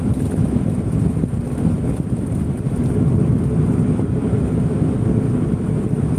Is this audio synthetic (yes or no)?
no